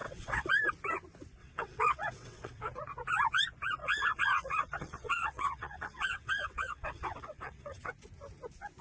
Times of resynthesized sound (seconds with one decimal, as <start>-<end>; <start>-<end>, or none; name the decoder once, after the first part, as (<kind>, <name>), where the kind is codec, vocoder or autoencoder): 0.0-0.5 (vocoder, WaveNeXt); 1.4-2.6; 3.8-7.9